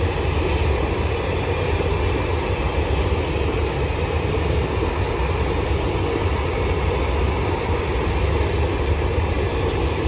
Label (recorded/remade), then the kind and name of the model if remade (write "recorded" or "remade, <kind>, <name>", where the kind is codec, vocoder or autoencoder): recorded